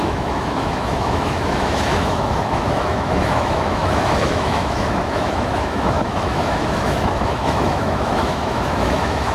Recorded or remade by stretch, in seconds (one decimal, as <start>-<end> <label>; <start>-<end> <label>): 0.0-9.3 remade

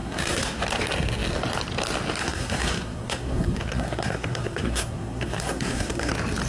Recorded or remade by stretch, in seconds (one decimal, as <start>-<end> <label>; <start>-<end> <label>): 0.0-0.6 remade; 0.6-2.2 recorded; 2.2-6.1 remade; 6.1-6.5 recorded

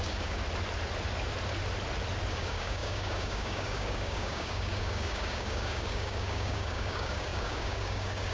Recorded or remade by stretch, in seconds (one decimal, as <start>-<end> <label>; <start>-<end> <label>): 0.0-0.4 remade; 0.4-2.3 recorded; 2.3-8.3 remade

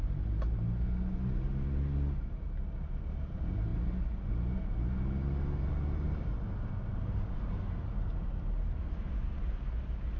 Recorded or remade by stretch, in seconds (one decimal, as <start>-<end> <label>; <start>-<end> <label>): 0.0-10.2 recorded

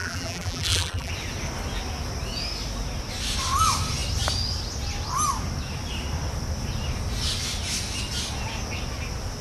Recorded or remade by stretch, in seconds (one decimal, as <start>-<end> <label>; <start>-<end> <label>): 0.0-1.1 remade; 1.1-9.4 recorded